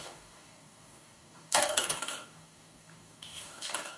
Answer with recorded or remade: remade